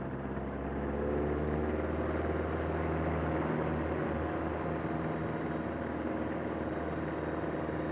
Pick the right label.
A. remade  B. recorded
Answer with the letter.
B